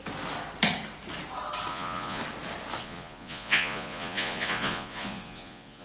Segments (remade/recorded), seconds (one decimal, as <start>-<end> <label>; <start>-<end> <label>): 0.0-1.7 recorded; 1.7-2.2 remade; 2.2-2.8 recorded; 2.8-5.8 remade